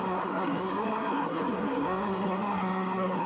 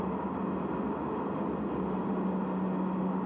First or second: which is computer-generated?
first